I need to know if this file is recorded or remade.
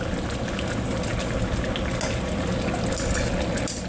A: recorded